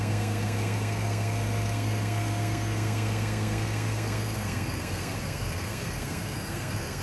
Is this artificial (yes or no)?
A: yes